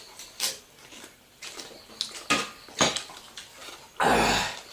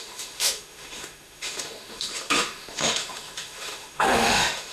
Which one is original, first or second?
first